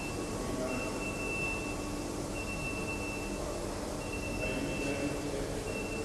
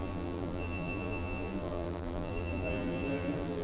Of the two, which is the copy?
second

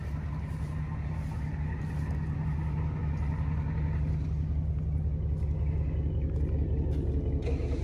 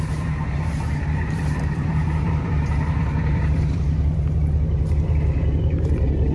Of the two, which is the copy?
second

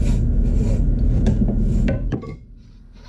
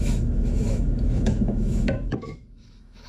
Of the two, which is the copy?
second